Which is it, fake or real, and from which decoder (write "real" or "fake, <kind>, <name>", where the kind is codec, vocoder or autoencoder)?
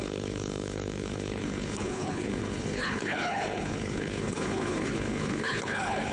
fake, codec, HILCodec